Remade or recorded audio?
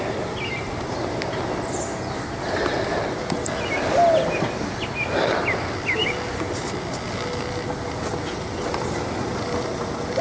recorded